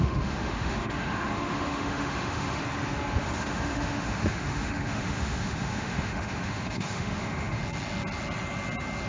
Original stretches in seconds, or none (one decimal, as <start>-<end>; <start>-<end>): 2.6-3.2; 7.6-9.1